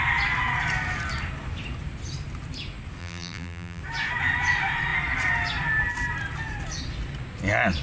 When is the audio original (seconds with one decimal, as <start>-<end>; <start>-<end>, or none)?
0.0-3.0; 3.8-7.8